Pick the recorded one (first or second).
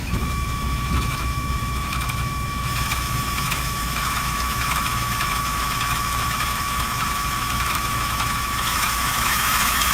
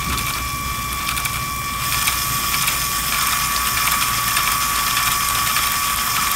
second